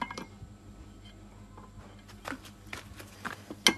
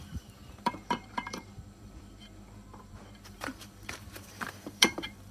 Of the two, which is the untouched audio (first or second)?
first